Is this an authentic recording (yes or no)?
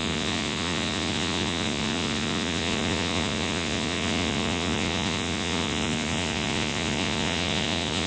no